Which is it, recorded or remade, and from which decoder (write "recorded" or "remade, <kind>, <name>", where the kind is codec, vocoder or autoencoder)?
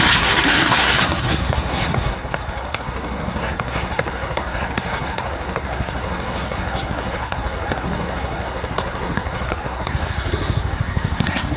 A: remade, codec, SNAC